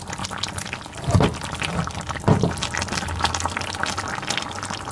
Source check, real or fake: real